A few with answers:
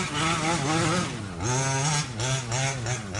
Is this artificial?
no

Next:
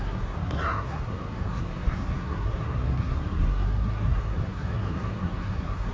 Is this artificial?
yes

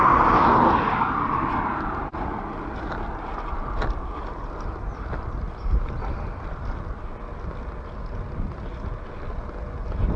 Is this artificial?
no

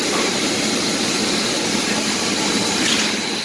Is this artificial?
yes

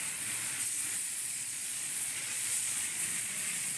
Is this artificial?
yes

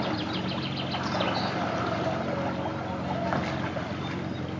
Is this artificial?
no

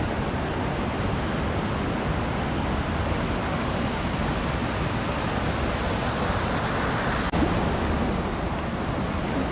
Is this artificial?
no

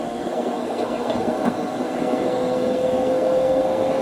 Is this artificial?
yes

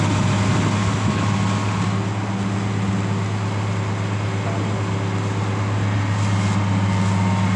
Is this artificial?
no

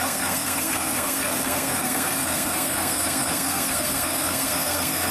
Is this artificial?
yes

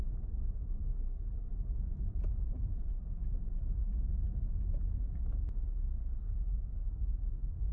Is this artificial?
yes